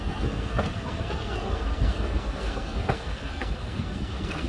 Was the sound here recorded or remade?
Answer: remade